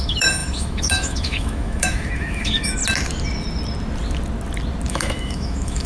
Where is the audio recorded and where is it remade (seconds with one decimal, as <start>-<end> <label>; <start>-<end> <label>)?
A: 0.0-2.8 remade; 2.8-4.9 recorded; 4.9-5.9 remade